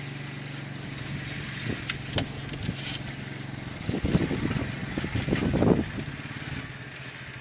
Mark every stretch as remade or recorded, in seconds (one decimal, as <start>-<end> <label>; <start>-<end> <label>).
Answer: 0.0-7.4 recorded